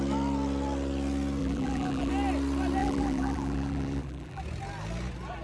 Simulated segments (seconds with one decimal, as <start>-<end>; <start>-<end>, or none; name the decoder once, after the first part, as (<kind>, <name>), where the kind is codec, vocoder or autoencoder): 1.4-2.1 (vocoder, BigVGAN v2); 2.8-4.4